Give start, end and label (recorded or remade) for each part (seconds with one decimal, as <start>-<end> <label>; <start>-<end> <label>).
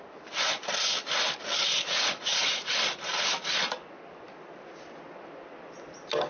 0.0-1.6 recorded; 1.6-2.7 remade; 2.7-6.3 recorded